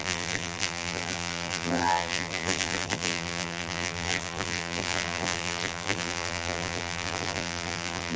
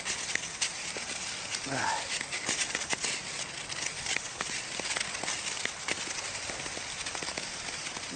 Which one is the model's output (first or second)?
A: first